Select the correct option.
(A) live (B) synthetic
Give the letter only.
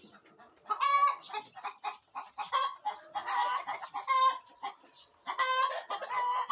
A